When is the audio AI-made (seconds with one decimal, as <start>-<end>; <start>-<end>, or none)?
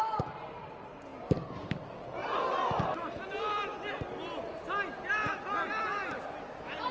none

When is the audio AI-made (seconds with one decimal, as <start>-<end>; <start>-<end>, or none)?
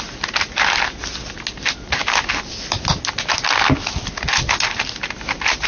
none